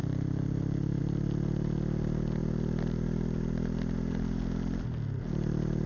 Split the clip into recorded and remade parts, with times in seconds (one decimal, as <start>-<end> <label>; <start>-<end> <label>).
0.0-5.9 recorded

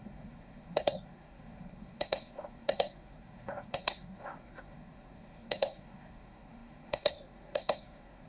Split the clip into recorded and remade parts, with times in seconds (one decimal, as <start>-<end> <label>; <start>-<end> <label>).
0.0-8.3 remade